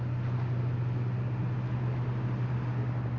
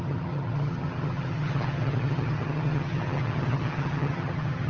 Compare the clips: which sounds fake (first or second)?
second